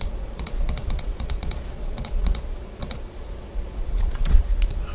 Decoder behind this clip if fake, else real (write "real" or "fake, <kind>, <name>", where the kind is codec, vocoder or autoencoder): fake, vocoder, Vocos